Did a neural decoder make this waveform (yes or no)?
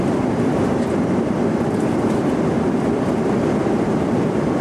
yes